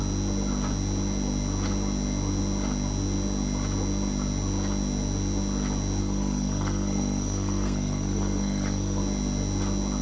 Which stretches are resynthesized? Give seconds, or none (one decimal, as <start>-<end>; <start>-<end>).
6.0-9.0